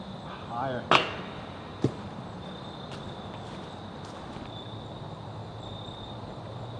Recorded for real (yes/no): yes